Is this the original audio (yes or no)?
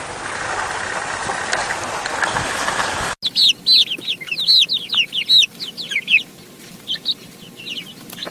yes